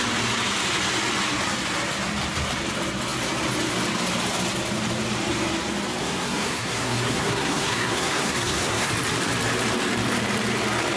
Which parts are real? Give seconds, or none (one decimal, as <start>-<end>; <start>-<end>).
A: 0.0-6.0; 8.9-11.0